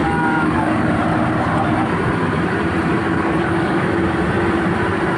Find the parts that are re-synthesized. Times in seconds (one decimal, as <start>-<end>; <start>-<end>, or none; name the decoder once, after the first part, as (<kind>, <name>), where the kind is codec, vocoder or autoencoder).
0.0-0.9 (codec, DAC); 3.0-3.9